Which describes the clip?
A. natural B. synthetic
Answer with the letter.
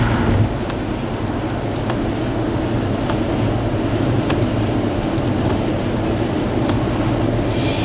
A